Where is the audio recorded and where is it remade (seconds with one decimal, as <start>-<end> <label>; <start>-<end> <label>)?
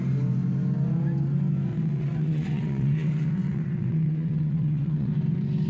0.0-1.7 recorded; 1.7-5.1 remade; 5.1-5.7 recorded